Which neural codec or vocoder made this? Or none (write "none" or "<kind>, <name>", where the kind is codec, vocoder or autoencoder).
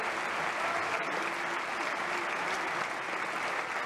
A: none